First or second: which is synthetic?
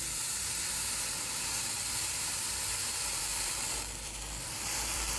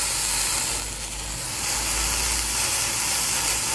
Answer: first